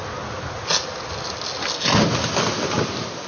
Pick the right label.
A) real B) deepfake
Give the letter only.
A